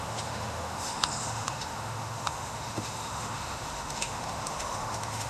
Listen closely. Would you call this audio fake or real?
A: fake